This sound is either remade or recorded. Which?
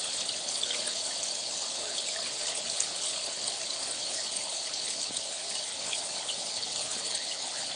remade